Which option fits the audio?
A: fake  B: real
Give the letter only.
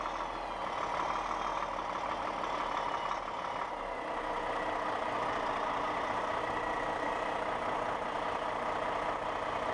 B